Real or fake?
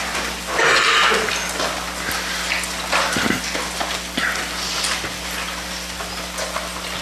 real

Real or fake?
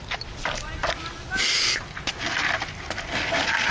real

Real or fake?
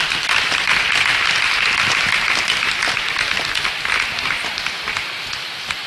real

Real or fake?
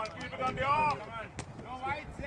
real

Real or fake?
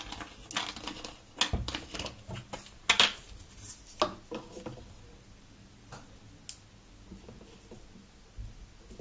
real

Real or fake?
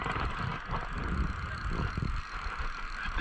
real